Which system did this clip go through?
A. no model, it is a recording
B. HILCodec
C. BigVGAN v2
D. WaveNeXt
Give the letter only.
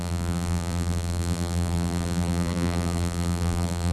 C